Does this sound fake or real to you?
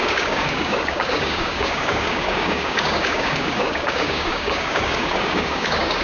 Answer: fake